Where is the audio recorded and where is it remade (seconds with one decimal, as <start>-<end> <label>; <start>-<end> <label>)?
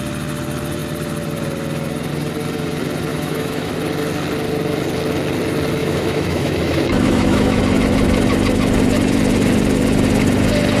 0.0-3.1 recorded; 3.1-3.7 remade; 3.7-5.8 recorded; 5.8-7.6 remade; 7.6-10.8 recorded